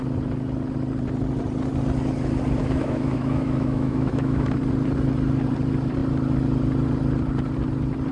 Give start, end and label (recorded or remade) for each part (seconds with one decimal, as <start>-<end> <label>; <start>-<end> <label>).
0.0-2.6 recorded; 2.6-4.6 remade; 4.6-8.1 recorded